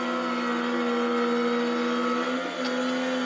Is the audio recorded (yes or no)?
yes